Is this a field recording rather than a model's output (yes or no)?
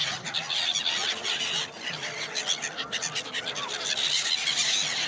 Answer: yes